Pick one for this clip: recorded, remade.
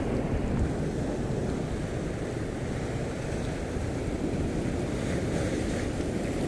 remade